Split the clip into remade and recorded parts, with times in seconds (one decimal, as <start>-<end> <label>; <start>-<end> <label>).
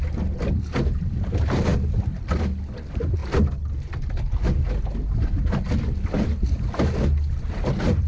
0.0-8.1 recorded